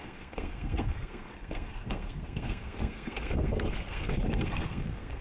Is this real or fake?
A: fake